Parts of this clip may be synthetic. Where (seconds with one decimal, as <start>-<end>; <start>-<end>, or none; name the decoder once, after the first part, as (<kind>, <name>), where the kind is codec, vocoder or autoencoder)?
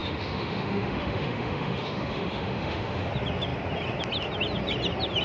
0.0-3.1 (autoencoder, DAC-VAE)